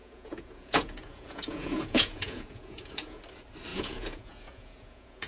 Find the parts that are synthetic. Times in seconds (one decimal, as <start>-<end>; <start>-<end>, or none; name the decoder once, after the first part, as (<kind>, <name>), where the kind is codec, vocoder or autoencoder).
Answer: 0.0-3.2 (vocoder, Vocos); 3.7-5.3

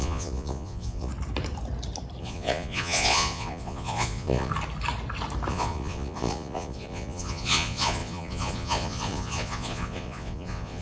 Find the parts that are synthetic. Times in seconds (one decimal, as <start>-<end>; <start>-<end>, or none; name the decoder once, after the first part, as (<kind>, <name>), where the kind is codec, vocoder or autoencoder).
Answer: 0.0-1.1 (vocoder, Vocos); 2.2-4.5; 5.5-10.8

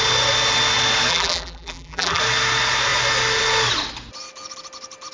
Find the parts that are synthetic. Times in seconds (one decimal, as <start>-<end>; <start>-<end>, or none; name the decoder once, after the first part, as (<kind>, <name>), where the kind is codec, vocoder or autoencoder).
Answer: 1.1-2.2 (vocoder, BigVGAN v2)